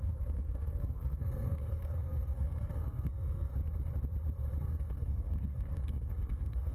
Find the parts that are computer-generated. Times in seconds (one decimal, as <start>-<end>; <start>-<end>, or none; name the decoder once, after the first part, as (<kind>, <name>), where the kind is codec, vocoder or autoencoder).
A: 0.0-3.5 (codec, SNAC); 4.6-6.7